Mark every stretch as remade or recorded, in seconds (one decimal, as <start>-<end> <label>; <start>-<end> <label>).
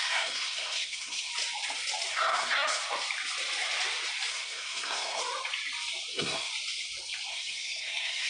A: 0.0-1.3 remade; 1.3-2.1 recorded; 2.1-2.8 remade; 2.8-4.3 recorded; 4.3-5.2 remade; 5.2-6.1 recorded; 6.1-6.5 remade; 6.5-7.3 recorded; 7.3-8.3 remade